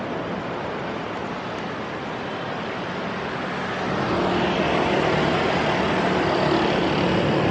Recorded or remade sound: recorded